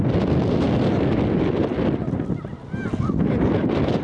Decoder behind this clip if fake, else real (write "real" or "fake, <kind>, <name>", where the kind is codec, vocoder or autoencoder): real